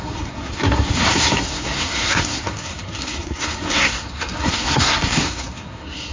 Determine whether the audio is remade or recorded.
remade